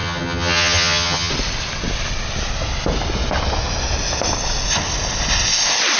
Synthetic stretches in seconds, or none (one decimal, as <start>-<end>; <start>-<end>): 0.0-1.3